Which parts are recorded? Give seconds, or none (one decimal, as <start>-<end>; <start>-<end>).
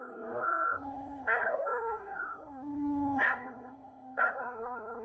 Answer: none